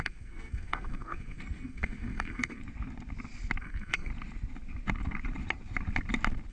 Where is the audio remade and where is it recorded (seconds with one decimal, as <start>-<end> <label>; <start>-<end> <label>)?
0.0-2.6 remade; 2.6-3.6 recorded; 3.6-4.1 remade; 4.1-6.5 recorded